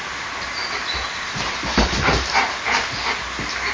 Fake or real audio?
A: real